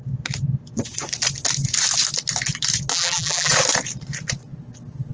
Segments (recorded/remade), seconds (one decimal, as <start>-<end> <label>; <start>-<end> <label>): 0.0-2.9 recorded; 2.9-3.5 remade; 3.5-5.1 recorded

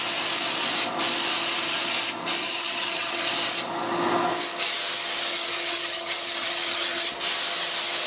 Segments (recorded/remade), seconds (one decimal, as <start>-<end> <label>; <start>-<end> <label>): 0.0-2.4 recorded; 2.4-3.3 remade; 3.3-5.3 recorded; 5.3-7.1 remade; 7.1-8.1 recorded

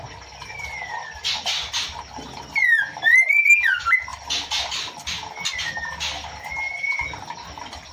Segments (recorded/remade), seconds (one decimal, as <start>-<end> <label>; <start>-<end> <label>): 0.0-7.9 recorded

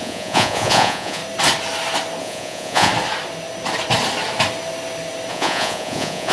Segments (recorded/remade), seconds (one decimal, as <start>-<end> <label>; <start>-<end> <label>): 0.0-1.2 remade; 1.2-2.2 recorded; 2.2-2.9 remade; 2.9-5.3 recorded; 5.3-6.3 remade

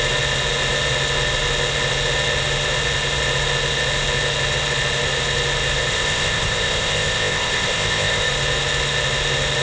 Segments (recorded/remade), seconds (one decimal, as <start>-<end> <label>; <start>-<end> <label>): 0.0-5.9 recorded; 5.9-8.3 remade; 8.3-9.6 recorded